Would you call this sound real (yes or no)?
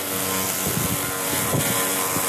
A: yes